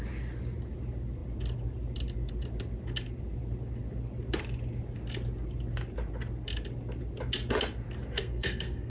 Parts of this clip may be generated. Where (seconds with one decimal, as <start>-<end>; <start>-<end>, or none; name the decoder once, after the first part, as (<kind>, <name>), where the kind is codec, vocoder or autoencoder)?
8.2-8.9 (codec, SNAC)